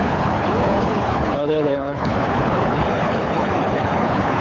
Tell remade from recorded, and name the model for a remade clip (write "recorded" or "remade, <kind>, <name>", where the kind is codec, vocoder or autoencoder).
remade, codec, HILCodec